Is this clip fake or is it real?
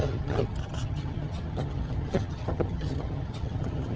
fake